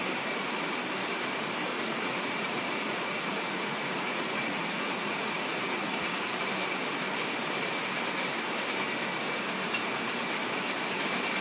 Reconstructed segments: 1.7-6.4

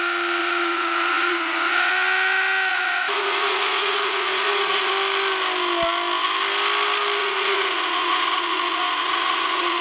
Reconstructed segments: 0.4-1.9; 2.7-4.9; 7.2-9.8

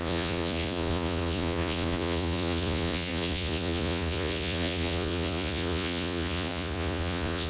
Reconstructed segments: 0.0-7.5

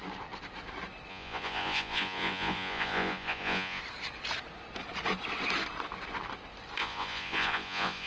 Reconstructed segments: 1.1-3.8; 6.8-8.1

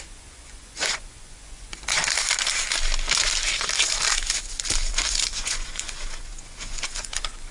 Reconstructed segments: 0.0-2.0; 4.9-7.5

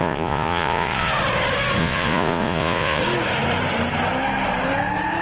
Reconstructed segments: 0.0-1.1; 1.8-3.0

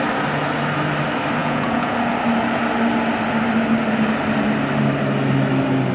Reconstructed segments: 1.4-1.9